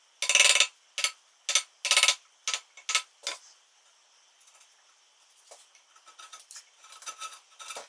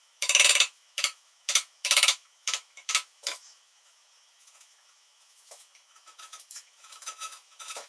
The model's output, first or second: second